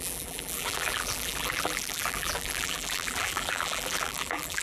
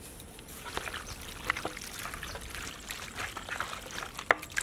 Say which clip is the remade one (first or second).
first